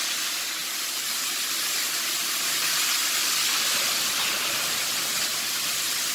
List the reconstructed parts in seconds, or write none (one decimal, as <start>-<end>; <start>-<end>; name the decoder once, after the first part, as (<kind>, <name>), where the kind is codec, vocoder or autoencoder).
0.0-6.1 (vocoder, BigVGAN v2)